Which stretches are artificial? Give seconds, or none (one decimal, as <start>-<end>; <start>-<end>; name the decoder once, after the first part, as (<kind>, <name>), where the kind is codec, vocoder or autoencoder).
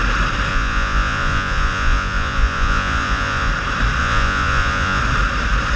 0.5-3.5 (vocoder, Vocos); 4.0-5.0